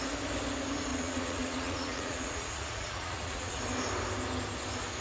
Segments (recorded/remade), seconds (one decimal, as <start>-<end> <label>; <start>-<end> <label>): 0.0-0.9 recorded; 0.9-3.6 remade; 3.6-5.0 recorded